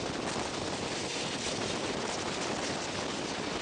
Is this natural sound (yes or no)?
yes